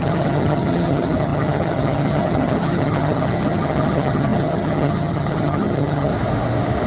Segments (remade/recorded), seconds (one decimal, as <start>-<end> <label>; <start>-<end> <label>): 0.0-6.1 remade; 6.1-6.9 recorded